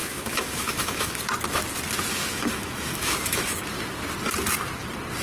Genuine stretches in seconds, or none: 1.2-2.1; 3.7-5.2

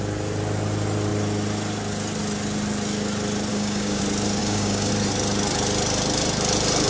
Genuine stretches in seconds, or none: 0.0-3.5; 4.0-4.4; 4.9-6.9

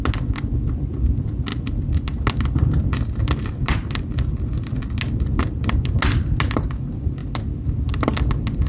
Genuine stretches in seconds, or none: 0.0-8.7

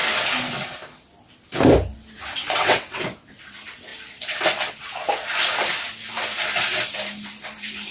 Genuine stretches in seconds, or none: 0.0-2.3; 3.0-7.9

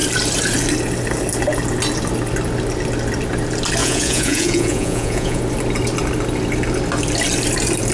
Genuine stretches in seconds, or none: 0.0-3.8; 5.4-7.9

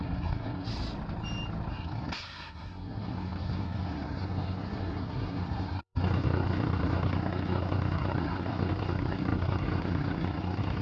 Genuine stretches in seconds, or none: 0.7-1.7